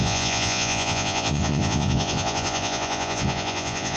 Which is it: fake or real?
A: fake